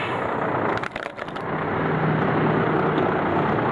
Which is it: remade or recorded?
recorded